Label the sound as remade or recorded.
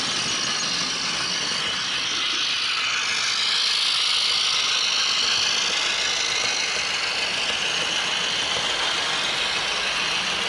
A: recorded